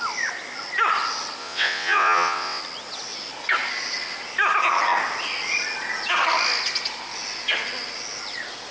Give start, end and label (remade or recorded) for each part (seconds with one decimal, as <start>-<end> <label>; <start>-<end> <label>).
0.0-1.4 recorded; 1.4-2.6 remade; 2.6-8.7 recorded